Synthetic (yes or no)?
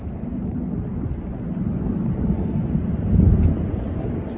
no